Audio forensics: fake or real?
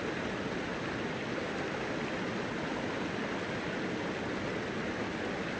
real